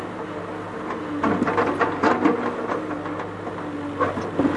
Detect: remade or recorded recorded